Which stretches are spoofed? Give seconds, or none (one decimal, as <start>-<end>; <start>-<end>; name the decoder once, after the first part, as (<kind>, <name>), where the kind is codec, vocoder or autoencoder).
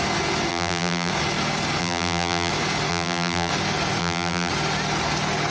0.5-1.1 (vocoder, BigVGAN v2); 1.8-2.5; 2.9-3.5; 4.0-4.5